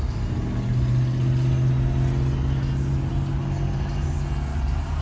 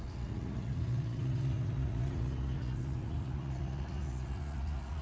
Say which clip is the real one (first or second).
first